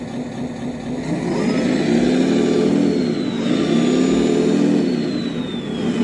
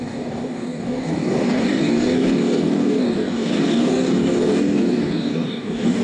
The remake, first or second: second